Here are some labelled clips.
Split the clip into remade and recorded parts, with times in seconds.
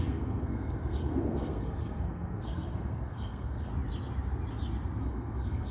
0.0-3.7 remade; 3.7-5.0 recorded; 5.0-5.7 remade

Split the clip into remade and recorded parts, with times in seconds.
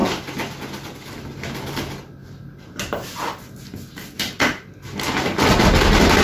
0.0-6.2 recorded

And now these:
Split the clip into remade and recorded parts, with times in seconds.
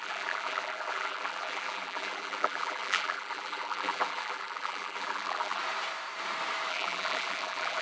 0.0-5.6 remade; 5.6-6.7 recorded; 6.7-7.8 remade